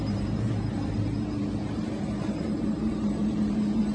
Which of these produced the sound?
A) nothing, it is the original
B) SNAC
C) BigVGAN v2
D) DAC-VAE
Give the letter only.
C